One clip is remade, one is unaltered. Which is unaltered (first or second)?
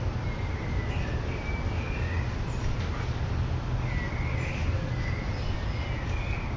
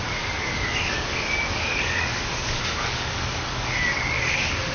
first